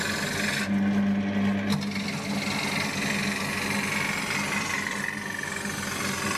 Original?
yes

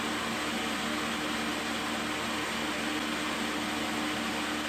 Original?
yes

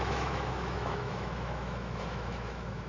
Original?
no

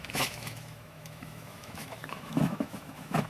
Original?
no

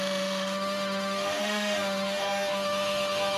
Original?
no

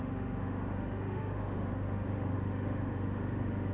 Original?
no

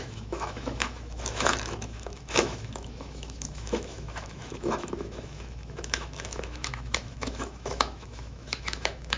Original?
no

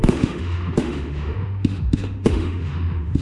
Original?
no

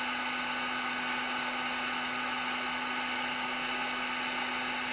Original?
yes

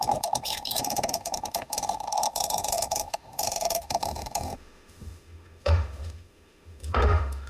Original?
no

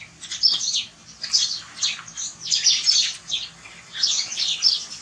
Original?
yes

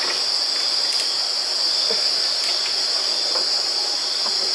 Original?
yes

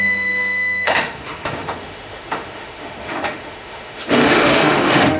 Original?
no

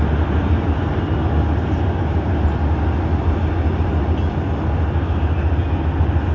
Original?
yes